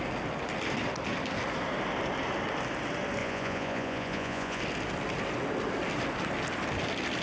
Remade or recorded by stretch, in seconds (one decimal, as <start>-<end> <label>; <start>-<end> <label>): 0.0-3.2 recorded; 3.2-4.6 remade; 4.6-7.2 recorded